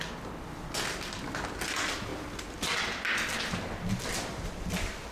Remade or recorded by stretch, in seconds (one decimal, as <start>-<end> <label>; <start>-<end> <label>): 0.0-5.1 recorded